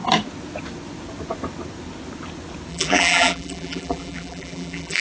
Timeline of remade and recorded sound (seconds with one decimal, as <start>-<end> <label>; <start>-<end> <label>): 0.0-2.7 recorded; 2.7-5.0 remade